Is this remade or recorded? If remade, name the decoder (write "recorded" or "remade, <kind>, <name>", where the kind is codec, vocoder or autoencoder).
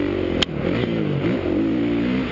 recorded